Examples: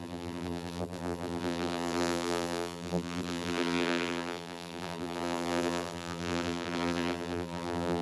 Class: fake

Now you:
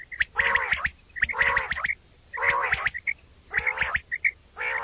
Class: real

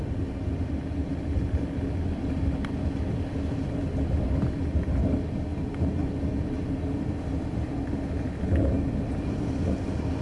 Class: real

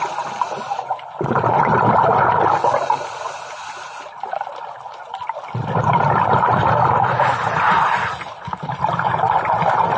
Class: real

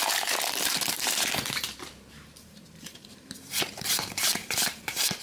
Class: fake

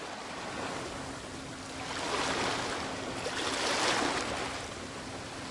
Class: real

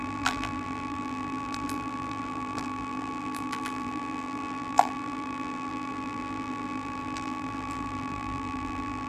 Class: fake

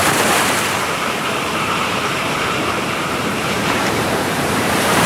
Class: fake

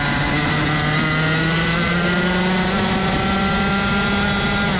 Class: real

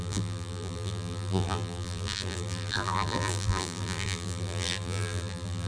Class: fake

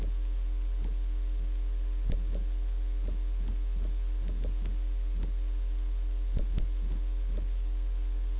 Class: real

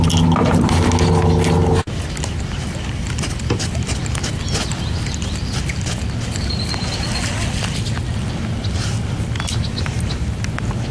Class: real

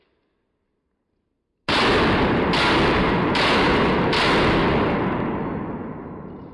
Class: real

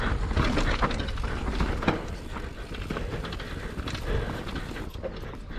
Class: real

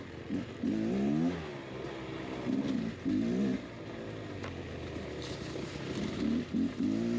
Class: real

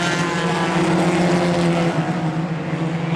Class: real